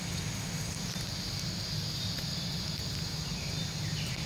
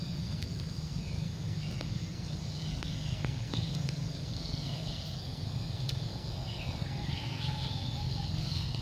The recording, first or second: first